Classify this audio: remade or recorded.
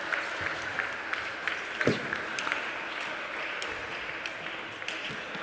recorded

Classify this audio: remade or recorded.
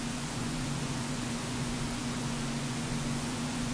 remade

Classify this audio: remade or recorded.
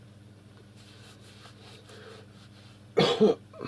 recorded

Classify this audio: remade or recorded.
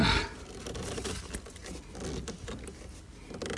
recorded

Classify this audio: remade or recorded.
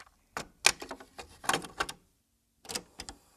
recorded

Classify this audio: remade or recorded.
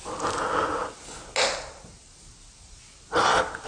recorded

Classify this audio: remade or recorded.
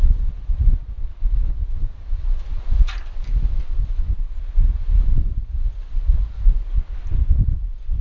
recorded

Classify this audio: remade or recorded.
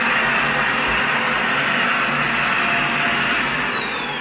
recorded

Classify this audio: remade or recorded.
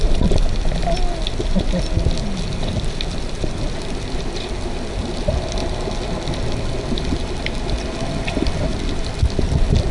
recorded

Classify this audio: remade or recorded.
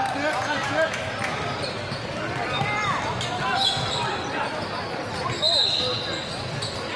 recorded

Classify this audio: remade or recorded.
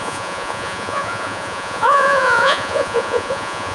remade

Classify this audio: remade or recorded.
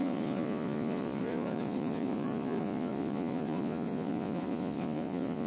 remade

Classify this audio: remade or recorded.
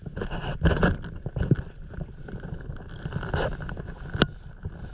recorded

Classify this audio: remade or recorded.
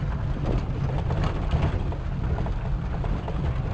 recorded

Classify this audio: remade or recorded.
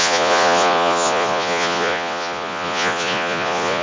remade